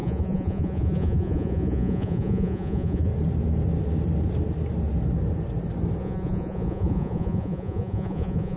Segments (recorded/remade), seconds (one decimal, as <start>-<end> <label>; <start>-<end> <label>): 0.0-3.1 remade; 3.1-6.0 recorded; 6.0-8.6 remade